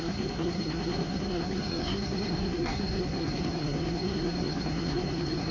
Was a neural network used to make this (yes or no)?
yes